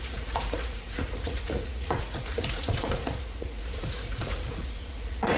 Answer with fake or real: fake